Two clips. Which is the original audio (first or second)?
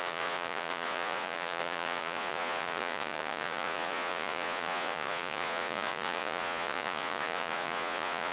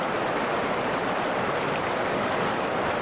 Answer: second